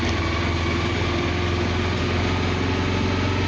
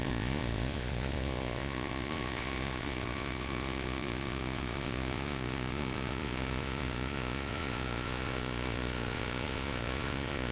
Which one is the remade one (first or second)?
second